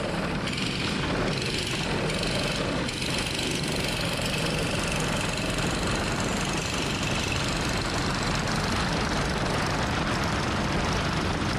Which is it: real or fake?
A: real